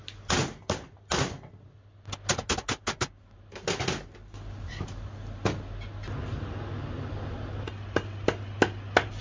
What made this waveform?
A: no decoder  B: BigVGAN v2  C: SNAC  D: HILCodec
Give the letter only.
A